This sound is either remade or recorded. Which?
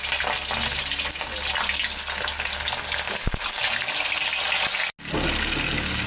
recorded